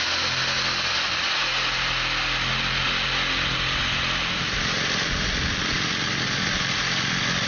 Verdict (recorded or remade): recorded